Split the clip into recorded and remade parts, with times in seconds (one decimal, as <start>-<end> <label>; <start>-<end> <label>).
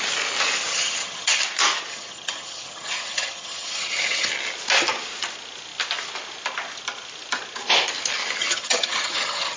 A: 0.0-0.7 recorded; 0.7-1.4 remade; 1.4-1.9 recorded; 1.9-4.3 remade; 4.3-8.4 recorded; 8.4-9.6 remade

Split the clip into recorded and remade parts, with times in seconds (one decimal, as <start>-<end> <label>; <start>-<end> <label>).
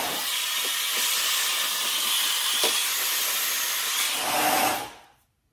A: 0.0-5.5 recorded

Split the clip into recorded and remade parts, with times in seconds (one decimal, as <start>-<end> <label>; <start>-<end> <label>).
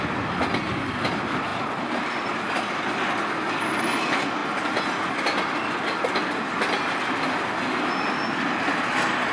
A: 0.0-9.3 recorded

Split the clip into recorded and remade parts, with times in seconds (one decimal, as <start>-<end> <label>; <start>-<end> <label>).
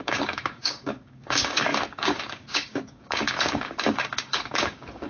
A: 0.0-5.1 remade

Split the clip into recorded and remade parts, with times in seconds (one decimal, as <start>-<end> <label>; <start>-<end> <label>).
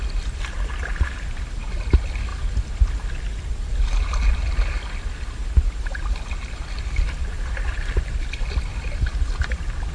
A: 0.0-7.2 recorded; 7.2-9.9 remade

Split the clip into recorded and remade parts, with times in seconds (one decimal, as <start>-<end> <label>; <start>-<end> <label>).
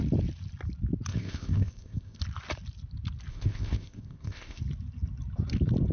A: 0.0-1.1 recorded; 1.1-2.2 remade; 2.2-3.3 recorded; 3.3-4.6 remade; 4.6-5.9 recorded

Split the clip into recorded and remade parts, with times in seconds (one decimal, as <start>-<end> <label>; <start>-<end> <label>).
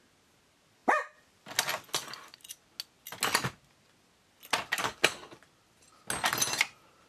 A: 0.0-7.1 recorded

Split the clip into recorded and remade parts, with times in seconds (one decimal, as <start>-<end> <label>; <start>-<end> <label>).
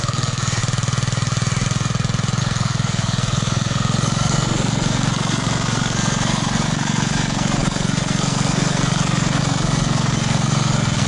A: 0.0-0.6 remade; 0.6-2.4 recorded; 2.4-11.1 remade